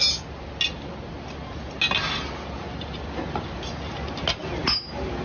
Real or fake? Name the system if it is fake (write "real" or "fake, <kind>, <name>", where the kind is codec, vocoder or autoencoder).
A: real